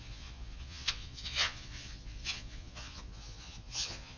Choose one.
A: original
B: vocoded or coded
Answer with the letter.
B